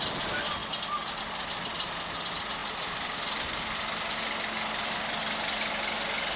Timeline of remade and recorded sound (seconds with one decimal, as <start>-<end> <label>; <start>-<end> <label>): 0.0-6.4 recorded